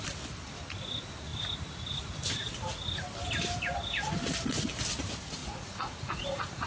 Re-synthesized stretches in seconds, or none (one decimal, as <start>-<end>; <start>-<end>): 5.4-6.7